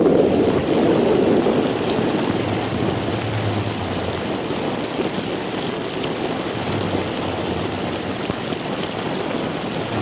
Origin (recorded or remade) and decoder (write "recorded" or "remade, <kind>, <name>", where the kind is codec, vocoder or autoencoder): recorded